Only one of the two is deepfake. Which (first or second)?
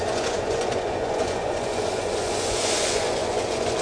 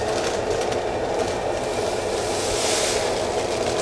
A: first